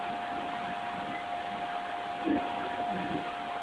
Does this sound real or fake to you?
real